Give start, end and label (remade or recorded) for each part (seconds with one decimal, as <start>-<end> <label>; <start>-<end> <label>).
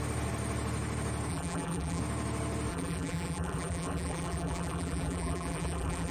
0.0-1.3 recorded; 1.3-2.0 remade; 2.0-2.7 recorded; 2.7-6.1 remade